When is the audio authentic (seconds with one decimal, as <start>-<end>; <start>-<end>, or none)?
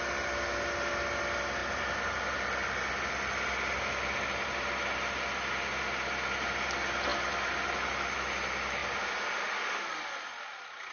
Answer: 0.0-10.9